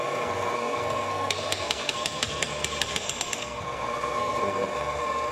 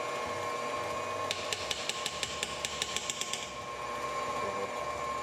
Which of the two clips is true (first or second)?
second